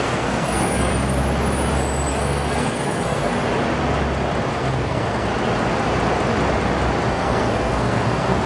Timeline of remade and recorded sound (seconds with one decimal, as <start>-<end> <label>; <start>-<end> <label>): 0.0-0.9 remade; 0.9-2.1 recorded; 2.1-3.3 remade; 3.3-4.5 recorded; 4.5-5.3 remade; 5.3-7.1 recorded; 7.1-8.5 remade